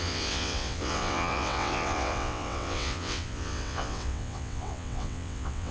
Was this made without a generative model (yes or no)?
no